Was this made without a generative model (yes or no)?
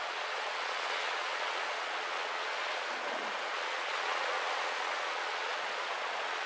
no